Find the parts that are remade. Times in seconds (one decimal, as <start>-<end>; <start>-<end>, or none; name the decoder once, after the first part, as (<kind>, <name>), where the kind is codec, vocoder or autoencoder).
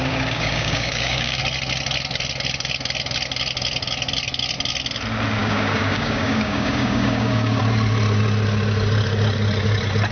0.0-1.4 (codec, DAC); 5.4-7.6